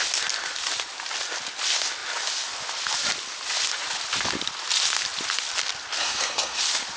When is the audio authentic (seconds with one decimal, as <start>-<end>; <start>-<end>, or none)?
0.0-6.0; 6.6-7.0